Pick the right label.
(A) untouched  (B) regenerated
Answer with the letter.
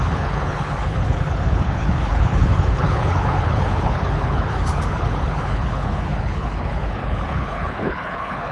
B